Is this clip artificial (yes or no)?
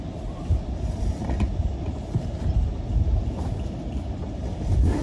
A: no